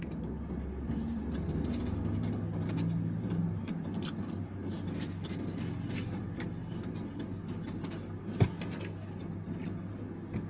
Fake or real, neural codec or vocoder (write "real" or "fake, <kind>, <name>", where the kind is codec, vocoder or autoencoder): real